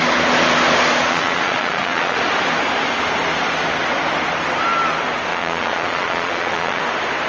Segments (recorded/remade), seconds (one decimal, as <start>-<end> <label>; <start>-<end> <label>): 0.0-1.1 recorded; 1.1-2.2 remade; 2.2-5.3 recorded; 5.3-6.8 remade; 6.8-7.3 recorded